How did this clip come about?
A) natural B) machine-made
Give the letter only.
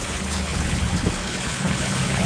B